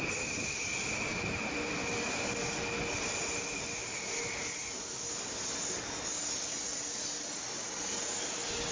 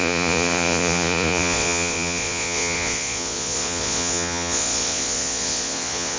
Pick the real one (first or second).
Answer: first